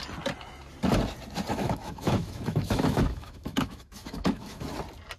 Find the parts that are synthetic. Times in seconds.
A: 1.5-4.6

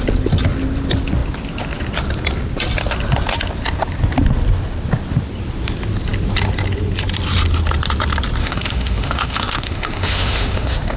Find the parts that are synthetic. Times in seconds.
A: 8.4-11.0